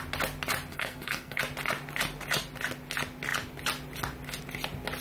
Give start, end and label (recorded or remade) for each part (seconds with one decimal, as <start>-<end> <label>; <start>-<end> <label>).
0.0-0.7 recorded; 0.7-1.4 remade; 1.4-5.0 recorded